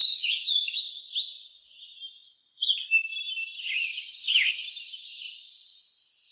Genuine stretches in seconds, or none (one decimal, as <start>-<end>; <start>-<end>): 0.8-6.3